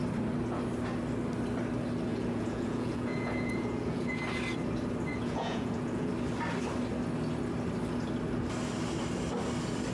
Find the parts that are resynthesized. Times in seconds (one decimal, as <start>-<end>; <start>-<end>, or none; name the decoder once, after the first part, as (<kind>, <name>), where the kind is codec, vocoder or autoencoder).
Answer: 2.1-4.2 (vocoder, Vocos); 5.1-6.1